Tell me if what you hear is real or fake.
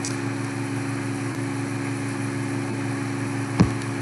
real